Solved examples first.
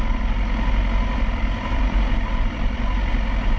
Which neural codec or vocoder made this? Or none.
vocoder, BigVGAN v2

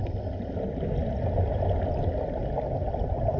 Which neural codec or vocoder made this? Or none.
none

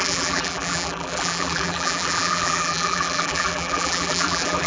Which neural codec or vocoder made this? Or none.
vocoder, BigVGAN v2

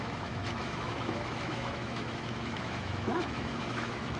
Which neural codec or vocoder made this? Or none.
autoencoder, DAC-VAE